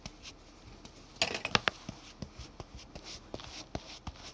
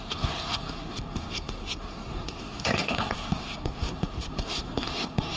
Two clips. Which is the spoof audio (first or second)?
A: second